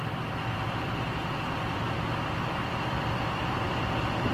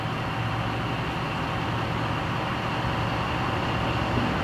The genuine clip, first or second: second